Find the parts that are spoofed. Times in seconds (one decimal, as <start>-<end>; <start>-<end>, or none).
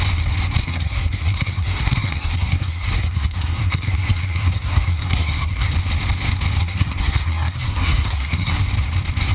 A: 0.6-5.7; 6.6-8.5